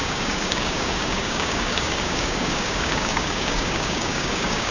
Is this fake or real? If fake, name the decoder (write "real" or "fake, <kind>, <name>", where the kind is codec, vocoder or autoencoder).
fake, codec, DAC